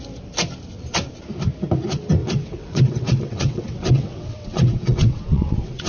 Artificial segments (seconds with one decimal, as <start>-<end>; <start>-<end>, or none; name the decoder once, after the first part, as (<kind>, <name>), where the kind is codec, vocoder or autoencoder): 2.2-5.9 (vocoder, WaveNeXt)